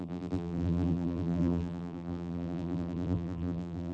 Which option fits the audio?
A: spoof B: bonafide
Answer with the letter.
A